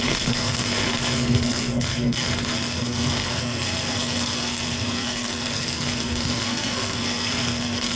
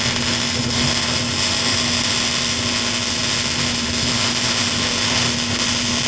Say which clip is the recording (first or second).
second